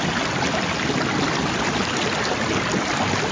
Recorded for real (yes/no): yes